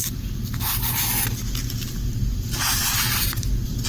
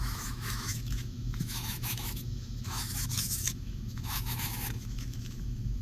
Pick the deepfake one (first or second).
second